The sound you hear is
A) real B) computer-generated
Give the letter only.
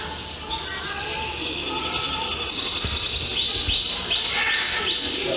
A